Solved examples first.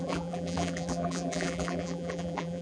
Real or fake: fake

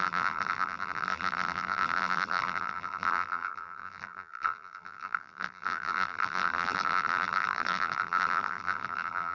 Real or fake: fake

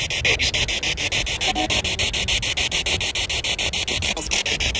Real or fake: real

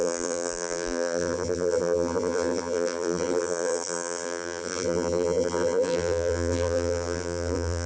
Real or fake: fake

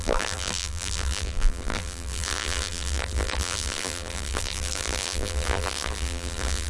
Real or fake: fake